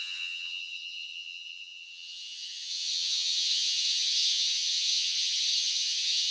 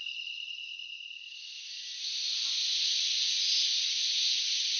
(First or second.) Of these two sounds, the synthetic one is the first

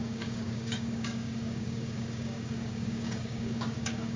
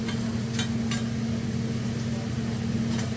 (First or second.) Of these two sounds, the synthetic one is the first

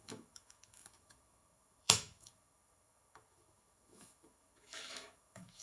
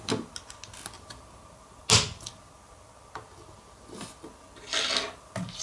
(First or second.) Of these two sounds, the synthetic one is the first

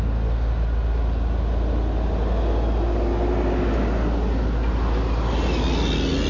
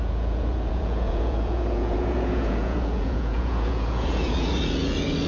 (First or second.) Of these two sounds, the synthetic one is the second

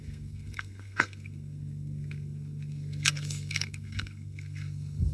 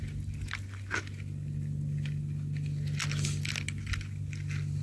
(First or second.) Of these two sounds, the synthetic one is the first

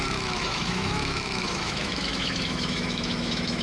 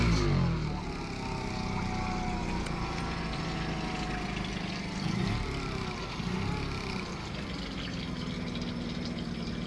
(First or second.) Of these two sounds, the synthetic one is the first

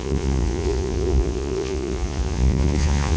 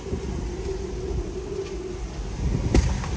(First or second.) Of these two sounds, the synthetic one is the first